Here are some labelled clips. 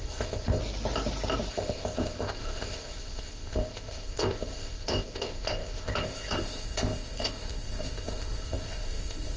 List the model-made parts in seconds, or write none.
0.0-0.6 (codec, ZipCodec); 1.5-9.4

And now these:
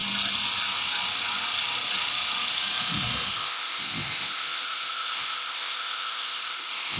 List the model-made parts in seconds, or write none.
3.3-7.0 (codec, ZipCodec)